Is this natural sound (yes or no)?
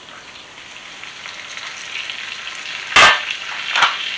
yes